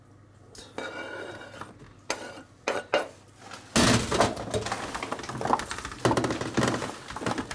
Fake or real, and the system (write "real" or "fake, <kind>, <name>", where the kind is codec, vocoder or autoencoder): real